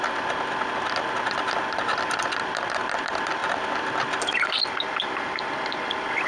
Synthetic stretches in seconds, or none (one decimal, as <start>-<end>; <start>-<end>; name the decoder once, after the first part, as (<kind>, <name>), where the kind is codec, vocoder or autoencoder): 0.0-6.3 (vocoder, BigVGAN v2)